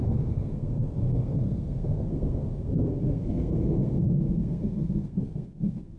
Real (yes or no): no